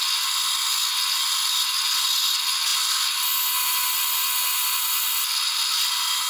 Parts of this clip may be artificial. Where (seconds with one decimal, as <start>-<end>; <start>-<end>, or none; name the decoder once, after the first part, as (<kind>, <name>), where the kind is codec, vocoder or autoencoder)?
none